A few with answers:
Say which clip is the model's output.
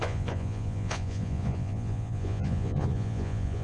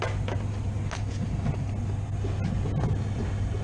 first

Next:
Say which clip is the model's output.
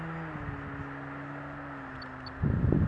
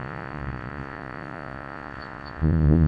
second